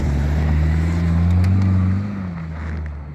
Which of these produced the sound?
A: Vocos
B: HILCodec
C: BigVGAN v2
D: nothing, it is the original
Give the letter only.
D